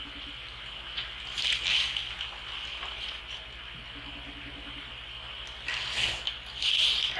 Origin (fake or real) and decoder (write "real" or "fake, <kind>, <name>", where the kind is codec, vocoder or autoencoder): real